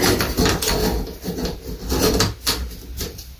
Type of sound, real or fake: real